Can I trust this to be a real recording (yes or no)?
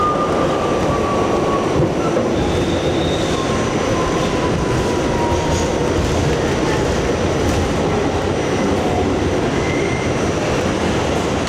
yes